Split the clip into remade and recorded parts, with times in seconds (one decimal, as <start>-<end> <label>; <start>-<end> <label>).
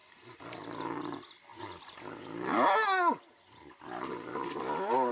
0.0-5.1 recorded